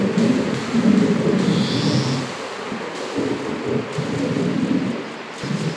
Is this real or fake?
real